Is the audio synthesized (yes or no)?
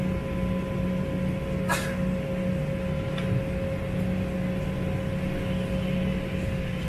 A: no